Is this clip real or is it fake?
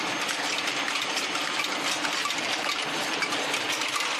fake